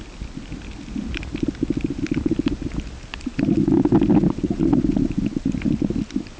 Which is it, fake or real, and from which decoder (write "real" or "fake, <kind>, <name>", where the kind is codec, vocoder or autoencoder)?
real